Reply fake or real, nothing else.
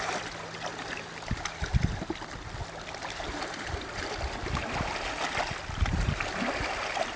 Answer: real